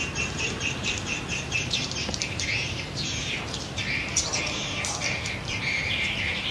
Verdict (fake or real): fake